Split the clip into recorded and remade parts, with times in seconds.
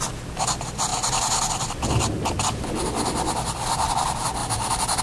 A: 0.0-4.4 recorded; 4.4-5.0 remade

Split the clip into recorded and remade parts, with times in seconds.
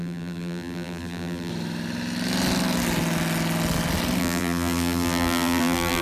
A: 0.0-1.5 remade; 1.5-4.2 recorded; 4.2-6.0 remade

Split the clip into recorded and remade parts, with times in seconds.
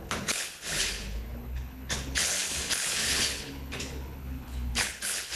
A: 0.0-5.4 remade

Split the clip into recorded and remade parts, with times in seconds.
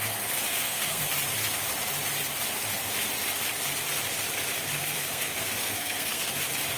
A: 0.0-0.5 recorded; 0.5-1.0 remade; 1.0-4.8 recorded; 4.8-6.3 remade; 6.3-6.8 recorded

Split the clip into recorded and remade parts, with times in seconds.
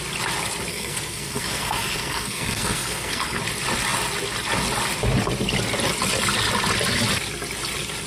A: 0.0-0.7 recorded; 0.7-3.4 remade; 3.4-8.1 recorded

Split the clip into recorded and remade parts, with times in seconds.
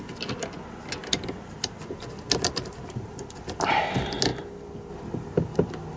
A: 0.0-6.0 recorded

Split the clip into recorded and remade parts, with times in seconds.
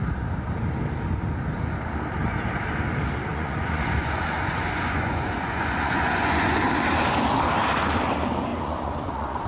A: 0.0-3.3 recorded; 3.3-6.6 remade; 6.6-8.5 recorded; 8.5-9.5 remade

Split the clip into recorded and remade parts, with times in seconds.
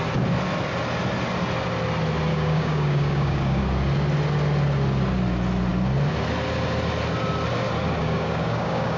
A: 0.0-2.3 recorded; 2.3-3.6 remade; 3.6-8.0 recorded; 8.0-9.0 remade